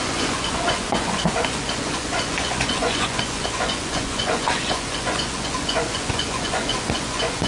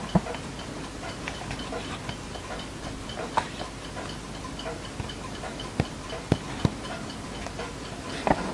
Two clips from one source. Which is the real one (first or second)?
second